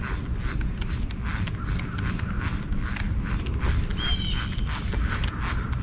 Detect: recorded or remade recorded